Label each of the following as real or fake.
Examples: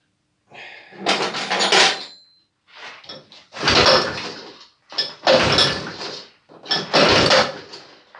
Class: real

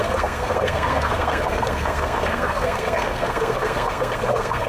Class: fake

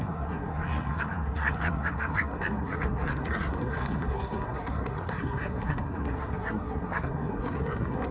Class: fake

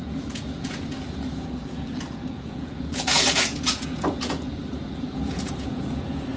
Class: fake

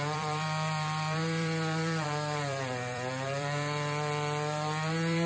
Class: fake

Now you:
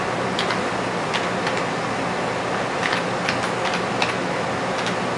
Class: real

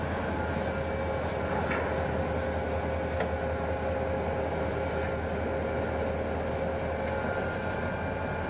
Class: real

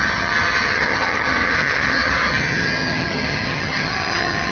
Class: fake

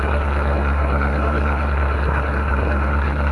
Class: fake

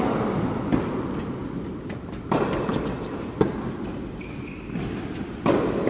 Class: real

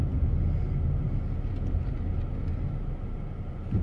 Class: real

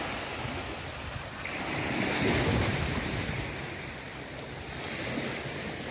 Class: real